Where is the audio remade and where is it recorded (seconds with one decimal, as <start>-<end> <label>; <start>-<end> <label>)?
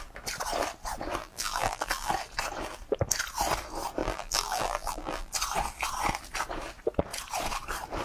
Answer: 0.0-1.2 recorded; 1.2-2.1 remade; 2.1-4.0 recorded; 4.0-5.3 remade; 5.3-8.0 recorded